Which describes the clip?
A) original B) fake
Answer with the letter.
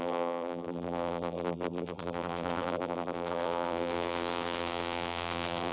B